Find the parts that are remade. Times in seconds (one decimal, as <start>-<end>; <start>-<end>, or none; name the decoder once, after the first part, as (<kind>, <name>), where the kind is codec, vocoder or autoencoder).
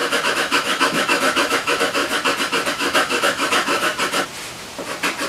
0.0-2.0 (autoencoder, DAC-VAE); 2.7-3.9